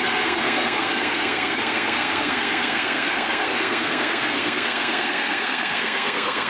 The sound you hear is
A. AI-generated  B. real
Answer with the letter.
A